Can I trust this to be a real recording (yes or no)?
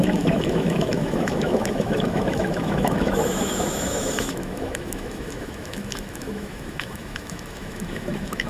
no